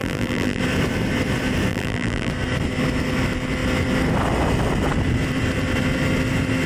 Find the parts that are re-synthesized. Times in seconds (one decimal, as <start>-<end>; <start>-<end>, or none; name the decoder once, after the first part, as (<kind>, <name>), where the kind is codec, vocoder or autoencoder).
0.0-0.6 (vocoder, BigVGAN v2); 1.7-2.3